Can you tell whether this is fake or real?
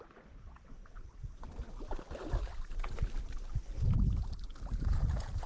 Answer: fake